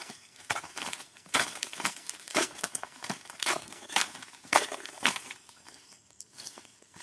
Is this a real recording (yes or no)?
no